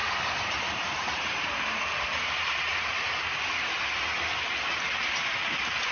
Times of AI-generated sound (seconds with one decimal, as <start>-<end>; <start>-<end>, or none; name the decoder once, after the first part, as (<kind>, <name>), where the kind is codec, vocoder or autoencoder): 0.0-3.5 (vocoder, BigVGAN v2)

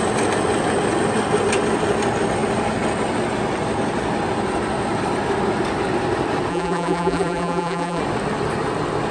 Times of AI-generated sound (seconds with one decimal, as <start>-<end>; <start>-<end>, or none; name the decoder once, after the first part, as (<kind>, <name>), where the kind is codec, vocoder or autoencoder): 6.5-8.0 (vocoder, BigVGAN v2)

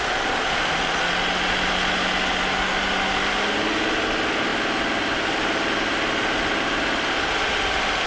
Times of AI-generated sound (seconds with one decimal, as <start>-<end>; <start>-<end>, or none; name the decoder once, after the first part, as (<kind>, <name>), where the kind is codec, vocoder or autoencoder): none

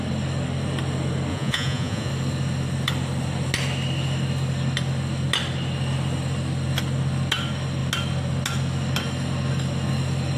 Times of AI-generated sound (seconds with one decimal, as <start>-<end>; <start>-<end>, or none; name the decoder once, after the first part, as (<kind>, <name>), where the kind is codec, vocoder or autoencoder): 1.3-2.1 (vocoder, Vocos)

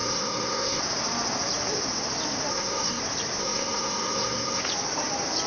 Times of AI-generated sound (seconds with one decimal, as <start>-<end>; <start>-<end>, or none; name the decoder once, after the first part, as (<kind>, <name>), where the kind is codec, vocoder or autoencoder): 0.0-0.8 (codec, SNAC); 2.5-3.0; 3.4-4.6